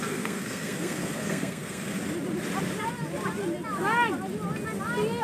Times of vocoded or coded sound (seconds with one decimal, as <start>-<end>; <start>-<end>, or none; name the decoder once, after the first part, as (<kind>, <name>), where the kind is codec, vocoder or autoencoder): 0.0-2.0 (codec, SNAC)